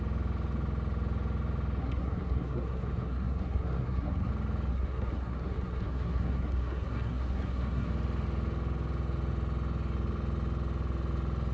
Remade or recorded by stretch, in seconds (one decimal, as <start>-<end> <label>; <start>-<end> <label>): 0.0-1.8 recorded; 1.8-4.3 remade; 4.3-4.7 recorded; 4.7-7.9 remade; 7.9-11.5 recorded